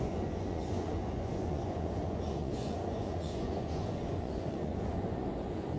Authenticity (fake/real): fake